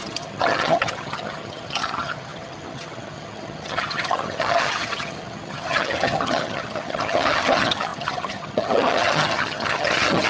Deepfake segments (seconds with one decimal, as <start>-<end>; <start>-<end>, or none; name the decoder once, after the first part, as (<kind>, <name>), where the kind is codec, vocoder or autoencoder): 0.0-10.3 (vocoder, HiFi-GAN)